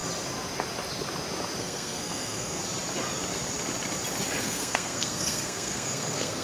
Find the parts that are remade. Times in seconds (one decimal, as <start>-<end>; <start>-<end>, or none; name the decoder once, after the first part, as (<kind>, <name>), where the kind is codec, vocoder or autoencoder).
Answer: 1.6-2.6 (codec, SNAC); 4.4-6.4